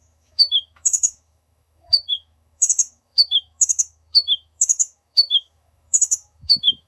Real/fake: fake